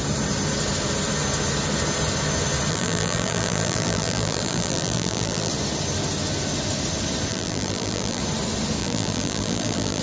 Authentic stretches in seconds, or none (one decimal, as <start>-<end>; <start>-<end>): 0.0-2.7; 5.5-7.3; 8.2-8.8